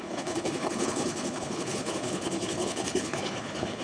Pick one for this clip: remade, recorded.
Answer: remade